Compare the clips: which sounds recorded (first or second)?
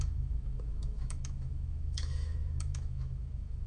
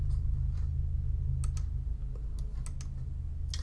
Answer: second